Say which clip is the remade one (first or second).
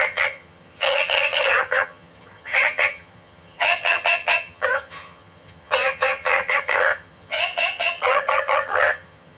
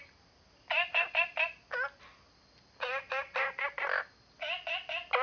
first